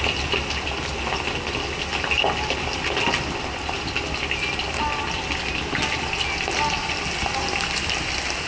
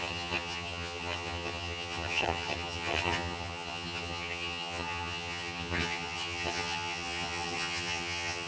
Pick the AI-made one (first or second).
second